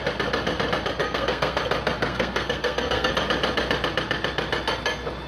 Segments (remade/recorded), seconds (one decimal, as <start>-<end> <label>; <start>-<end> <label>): 0.0-1.0 recorded; 1.0-1.6 remade; 1.6-2.1 recorded; 2.1-3.1 remade; 3.1-5.3 recorded